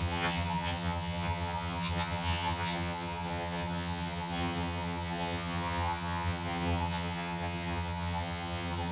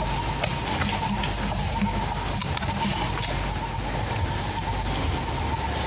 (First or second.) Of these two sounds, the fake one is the first